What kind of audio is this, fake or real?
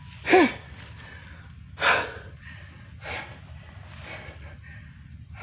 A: real